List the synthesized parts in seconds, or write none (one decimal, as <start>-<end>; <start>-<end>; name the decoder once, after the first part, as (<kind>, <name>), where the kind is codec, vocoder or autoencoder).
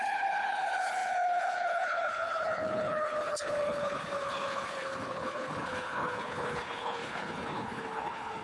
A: 0.0-8.4 (codec, HILCodec)